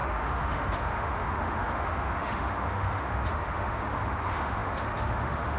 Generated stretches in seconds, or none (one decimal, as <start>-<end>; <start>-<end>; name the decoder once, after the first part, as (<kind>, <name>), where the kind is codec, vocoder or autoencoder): 0.0-5.6 (autoencoder, DAC-VAE)